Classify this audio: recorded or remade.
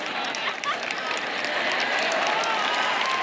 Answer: recorded